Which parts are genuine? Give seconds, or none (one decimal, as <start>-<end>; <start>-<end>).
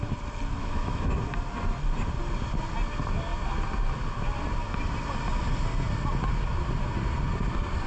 0.0-0.6; 1.1-7.9